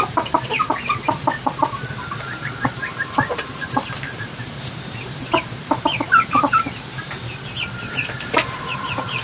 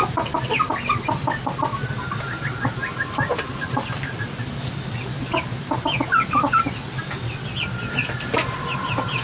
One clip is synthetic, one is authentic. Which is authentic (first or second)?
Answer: second